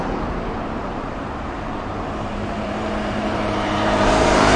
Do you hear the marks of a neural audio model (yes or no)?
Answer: yes